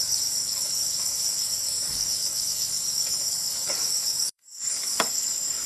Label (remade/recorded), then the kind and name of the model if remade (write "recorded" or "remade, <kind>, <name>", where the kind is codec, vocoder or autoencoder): remade, codec, DAC